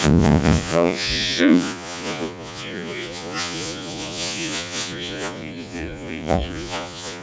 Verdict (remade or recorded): remade